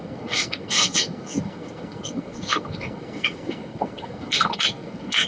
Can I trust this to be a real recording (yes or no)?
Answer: no